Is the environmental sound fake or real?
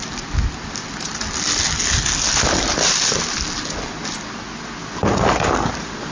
real